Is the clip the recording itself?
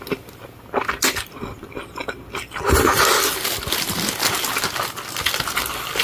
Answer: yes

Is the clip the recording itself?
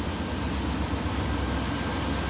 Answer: yes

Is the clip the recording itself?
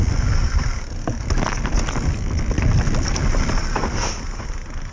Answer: yes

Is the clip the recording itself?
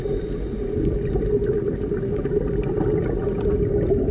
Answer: yes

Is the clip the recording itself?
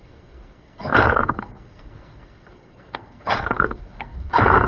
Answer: no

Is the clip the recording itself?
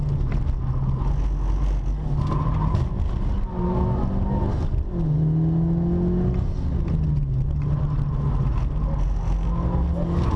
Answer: yes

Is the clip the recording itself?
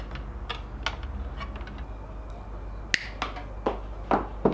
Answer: yes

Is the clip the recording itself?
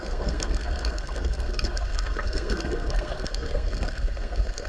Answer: no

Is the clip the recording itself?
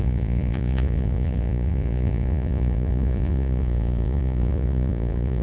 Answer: no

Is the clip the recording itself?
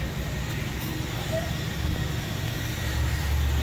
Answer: yes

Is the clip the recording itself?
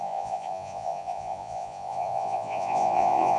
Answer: no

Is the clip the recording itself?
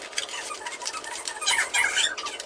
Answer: yes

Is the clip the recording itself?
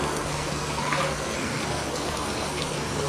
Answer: no